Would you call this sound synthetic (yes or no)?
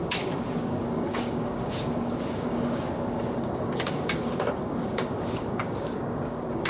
yes